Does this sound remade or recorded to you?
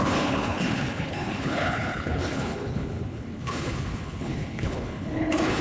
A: remade